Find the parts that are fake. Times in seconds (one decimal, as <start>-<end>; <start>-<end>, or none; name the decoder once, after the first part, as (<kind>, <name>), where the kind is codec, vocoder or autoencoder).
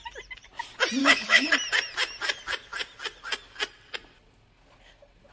1.0-1.5 (codec, HILCodec)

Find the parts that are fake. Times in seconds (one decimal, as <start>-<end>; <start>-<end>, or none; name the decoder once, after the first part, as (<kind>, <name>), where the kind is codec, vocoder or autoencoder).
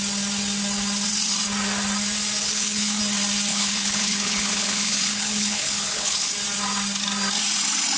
2.4-3.0 (codec, HILCodec); 3.5-6.3